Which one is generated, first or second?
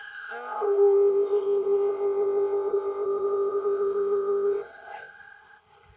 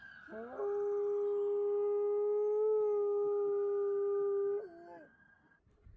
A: first